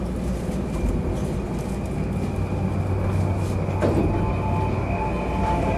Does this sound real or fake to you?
real